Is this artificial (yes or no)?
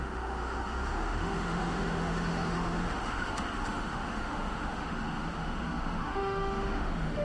yes